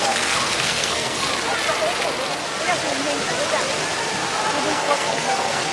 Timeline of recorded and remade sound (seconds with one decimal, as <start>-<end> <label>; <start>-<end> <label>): 0.0-1.3 remade; 1.3-4.7 recorded; 4.7-5.7 remade